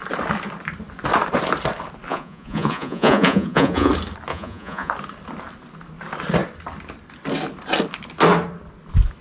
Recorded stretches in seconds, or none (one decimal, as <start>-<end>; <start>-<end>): 0.0-2.1; 3.9-4.3; 4.9-9.2